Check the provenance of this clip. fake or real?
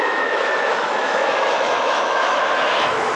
fake